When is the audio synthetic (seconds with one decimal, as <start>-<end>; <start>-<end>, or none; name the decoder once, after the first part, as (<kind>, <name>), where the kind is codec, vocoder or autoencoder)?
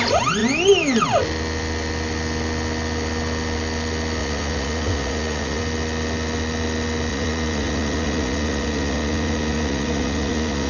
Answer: 4.2-5.6 (vocoder, Vocos); 7.1-10.7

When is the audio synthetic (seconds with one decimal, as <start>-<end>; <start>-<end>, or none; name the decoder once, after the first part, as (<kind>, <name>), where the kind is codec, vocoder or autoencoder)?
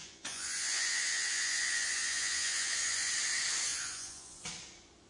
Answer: 0.0-3.1 (vocoder, Vocos); 3.7-4.4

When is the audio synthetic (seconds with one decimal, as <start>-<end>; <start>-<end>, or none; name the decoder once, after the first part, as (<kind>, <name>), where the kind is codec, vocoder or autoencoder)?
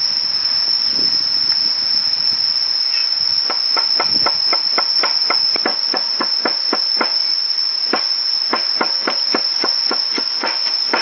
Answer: 3.0-3.9 (vocoder, Vocos); 5.7-6.4; 9.5-10.6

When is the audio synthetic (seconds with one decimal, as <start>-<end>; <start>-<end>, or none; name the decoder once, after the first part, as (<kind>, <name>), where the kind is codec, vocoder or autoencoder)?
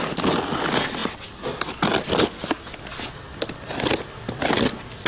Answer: none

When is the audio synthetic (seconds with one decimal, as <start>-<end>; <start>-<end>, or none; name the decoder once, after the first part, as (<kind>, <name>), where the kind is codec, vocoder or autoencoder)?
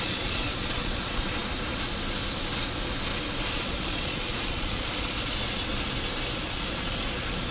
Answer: 0.0-1.4 (vocoder, Vocos); 3.6-5.7; 6.4-7.5